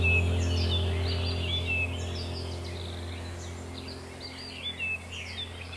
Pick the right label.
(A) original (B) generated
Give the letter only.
A